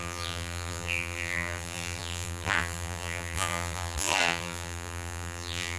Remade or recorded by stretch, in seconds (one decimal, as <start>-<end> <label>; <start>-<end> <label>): 0.0-5.8 remade